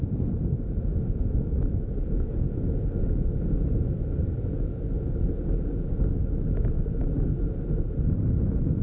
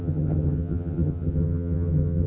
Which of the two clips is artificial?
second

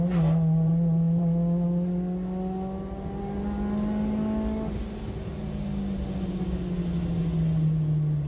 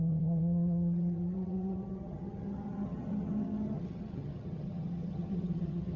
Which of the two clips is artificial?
second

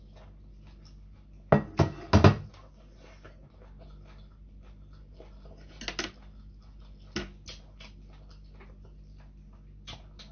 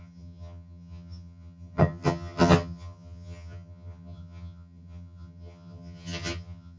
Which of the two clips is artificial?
second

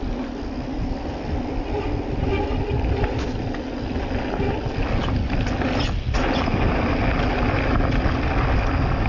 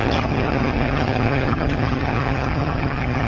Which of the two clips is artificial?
second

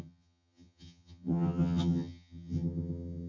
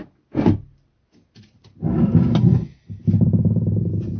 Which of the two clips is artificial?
first